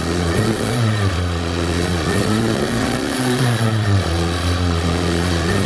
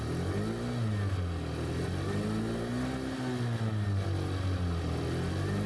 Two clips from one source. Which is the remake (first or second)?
first